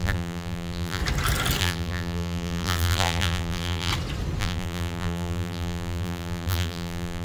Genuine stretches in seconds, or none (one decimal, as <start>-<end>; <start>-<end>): 1.0-1.6; 3.9-4.4